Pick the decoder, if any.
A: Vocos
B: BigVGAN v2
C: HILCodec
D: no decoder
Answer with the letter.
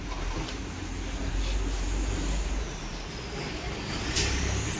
B